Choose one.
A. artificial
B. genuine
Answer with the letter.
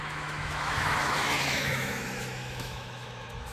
A